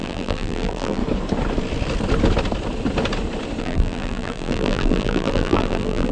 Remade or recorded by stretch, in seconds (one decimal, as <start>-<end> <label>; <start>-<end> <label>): 0.0-1.0 remade; 1.0-3.6 recorded; 3.6-6.1 remade